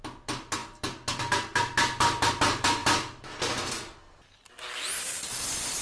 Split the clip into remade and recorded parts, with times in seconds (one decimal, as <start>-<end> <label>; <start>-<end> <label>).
0.0-5.8 recorded